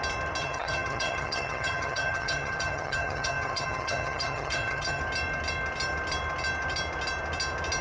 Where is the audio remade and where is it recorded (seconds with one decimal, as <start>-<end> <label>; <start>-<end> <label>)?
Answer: 0.0-0.4 recorded; 0.4-5.0 remade; 5.0-7.8 recorded